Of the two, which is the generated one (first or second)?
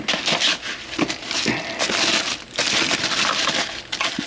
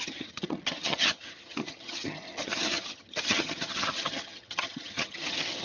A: second